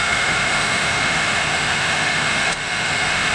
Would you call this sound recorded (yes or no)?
no